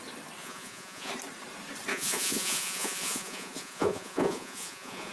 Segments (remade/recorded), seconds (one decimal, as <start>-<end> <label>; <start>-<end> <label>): 0.0-0.4 recorded; 0.4-1.1 remade; 1.1-1.9 recorded; 1.9-5.1 remade